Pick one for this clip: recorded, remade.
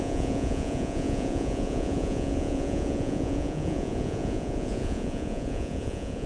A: remade